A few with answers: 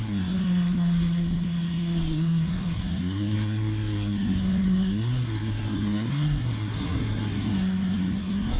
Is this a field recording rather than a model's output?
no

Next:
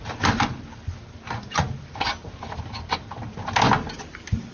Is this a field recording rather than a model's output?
yes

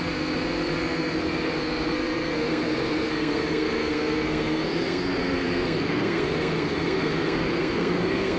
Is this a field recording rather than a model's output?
no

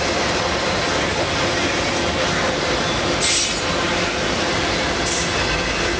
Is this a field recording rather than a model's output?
yes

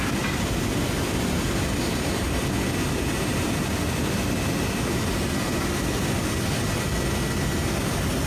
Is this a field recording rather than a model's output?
no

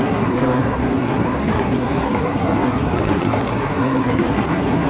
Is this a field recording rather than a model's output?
no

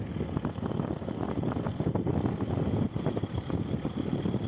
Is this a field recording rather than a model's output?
yes